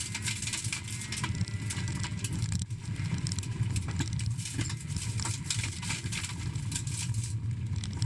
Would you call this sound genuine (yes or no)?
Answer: yes